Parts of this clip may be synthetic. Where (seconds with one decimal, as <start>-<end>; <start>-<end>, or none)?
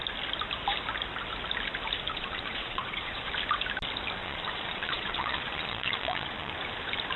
2.1-3.3; 4.2-6.5